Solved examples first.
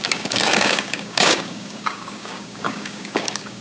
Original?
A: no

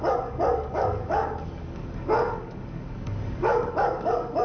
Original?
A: no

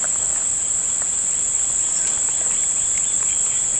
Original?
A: yes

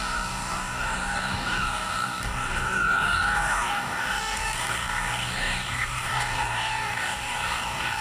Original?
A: no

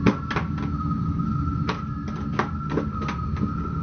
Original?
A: yes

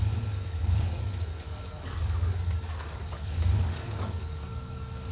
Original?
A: no